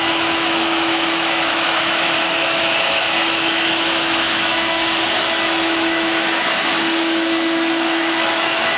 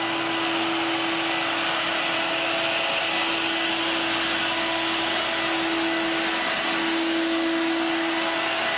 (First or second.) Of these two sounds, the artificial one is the first